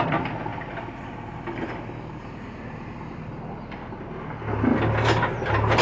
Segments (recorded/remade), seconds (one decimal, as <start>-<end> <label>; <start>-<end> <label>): 0.0-5.8 recorded